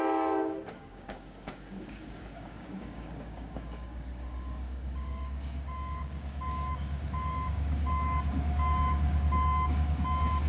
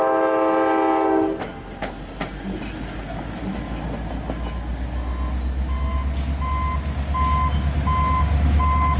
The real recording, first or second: second